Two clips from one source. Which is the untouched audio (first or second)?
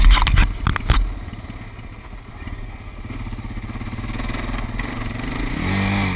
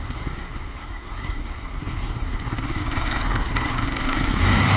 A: first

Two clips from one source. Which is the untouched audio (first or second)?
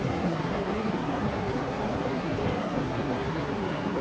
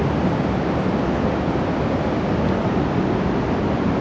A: second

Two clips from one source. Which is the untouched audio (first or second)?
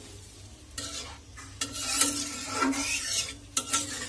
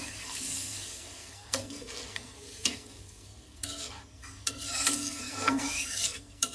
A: first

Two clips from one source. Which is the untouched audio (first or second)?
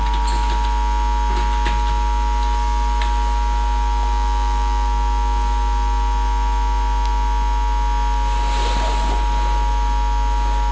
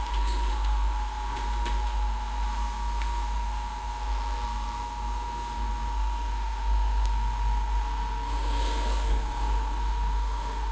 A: first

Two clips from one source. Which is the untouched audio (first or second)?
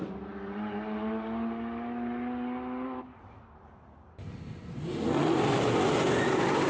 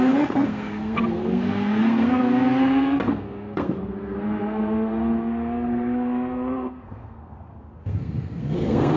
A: first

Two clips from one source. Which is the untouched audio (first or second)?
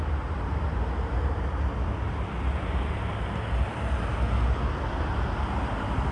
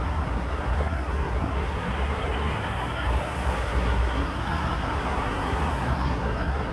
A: first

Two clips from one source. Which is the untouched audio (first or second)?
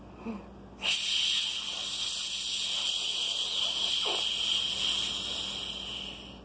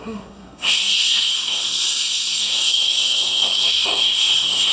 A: first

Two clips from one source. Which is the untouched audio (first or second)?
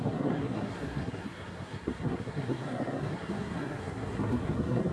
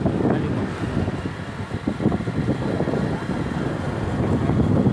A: second